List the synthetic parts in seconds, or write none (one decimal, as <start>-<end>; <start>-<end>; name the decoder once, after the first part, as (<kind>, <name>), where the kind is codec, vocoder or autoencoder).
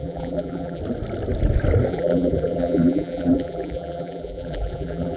0.0-0.8 (vocoder, BigVGAN v2); 1.9-5.2